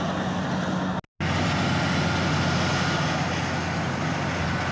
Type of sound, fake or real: real